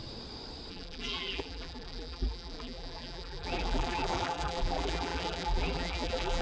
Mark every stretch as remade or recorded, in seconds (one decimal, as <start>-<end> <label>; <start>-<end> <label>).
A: 0.0-0.7 recorded; 0.7-6.4 remade